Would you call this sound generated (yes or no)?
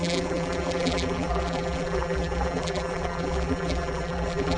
yes